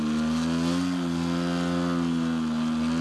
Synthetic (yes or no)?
no